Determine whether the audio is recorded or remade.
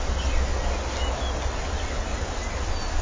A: recorded